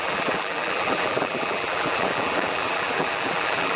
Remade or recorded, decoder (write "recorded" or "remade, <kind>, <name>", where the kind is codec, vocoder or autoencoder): remade, vocoder, BigVGAN v2